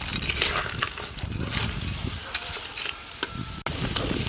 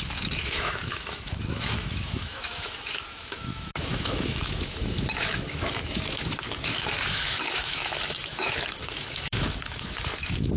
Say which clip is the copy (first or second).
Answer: second